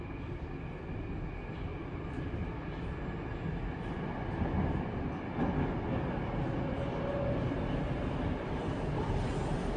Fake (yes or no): no